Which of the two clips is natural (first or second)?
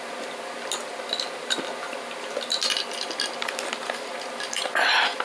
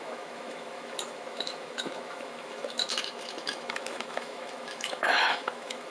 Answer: first